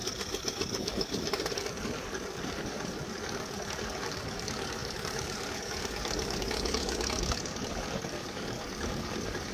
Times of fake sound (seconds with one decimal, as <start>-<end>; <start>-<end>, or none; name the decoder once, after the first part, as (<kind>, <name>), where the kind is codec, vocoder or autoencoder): 0.0-9.5 (codec, DAC)